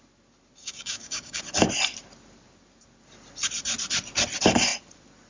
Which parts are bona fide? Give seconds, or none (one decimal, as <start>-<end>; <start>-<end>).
0.0-0.6; 1.4-5.3